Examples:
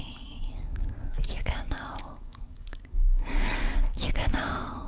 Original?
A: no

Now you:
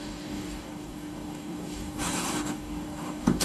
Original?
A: no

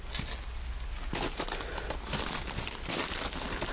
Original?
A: yes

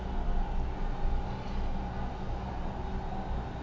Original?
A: yes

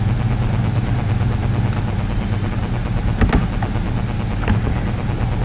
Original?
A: yes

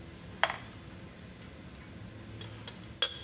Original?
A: yes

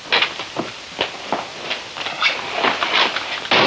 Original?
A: yes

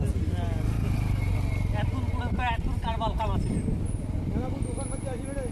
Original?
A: yes